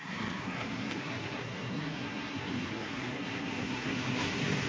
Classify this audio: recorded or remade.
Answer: remade